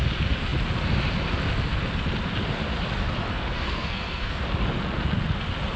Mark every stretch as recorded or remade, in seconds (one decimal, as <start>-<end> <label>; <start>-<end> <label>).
0.0-3.3 recorded; 3.3-4.4 remade; 4.4-5.8 recorded